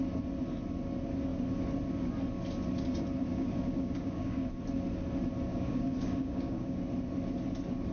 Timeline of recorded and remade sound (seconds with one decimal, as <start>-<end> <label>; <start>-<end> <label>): 0.0-3.3 recorded; 3.3-4.5 remade; 4.5-5.5 recorded; 5.5-6.8 remade; 6.8-7.9 recorded

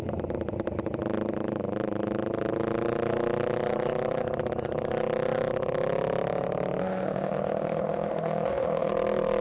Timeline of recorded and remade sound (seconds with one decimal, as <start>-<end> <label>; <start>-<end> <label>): 0.0-6.8 recorded; 6.8-8.9 remade; 8.9-9.4 recorded

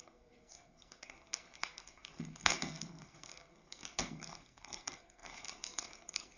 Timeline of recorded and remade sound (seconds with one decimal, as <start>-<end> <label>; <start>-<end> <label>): 0.0-6.4 remade